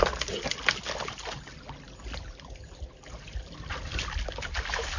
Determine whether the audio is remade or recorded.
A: recorded